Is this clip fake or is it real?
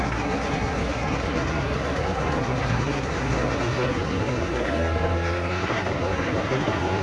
fake